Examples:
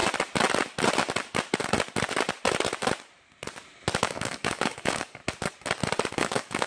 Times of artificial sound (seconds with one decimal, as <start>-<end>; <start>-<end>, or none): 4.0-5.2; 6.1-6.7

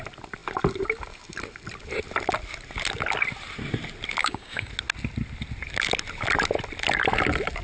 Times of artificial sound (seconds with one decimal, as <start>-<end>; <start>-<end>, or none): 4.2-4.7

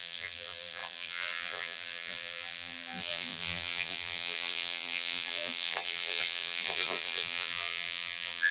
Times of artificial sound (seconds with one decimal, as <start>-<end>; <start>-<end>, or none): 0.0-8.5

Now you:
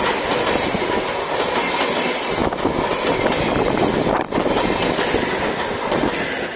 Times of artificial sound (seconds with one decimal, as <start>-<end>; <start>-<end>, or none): none

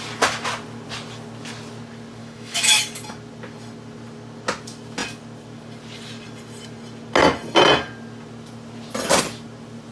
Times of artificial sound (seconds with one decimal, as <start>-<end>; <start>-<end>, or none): 2.2-2.8

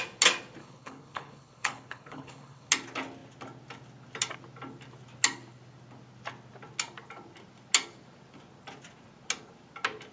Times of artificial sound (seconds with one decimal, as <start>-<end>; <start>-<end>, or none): 0.6-2.7

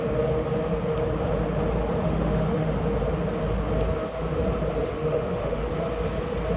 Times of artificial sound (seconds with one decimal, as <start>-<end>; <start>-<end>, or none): 2.0-2.7; 4.9-5.7